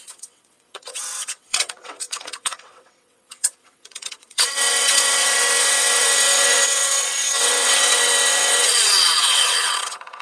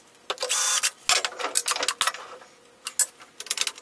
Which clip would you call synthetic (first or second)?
first